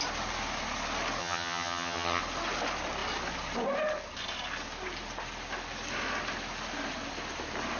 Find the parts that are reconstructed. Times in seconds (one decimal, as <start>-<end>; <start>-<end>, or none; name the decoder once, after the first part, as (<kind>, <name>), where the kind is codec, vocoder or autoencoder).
1.2-2.2 (vocoder, HiFi-GAN)